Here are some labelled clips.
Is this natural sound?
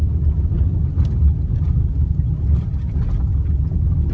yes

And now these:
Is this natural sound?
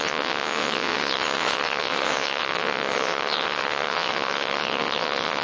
no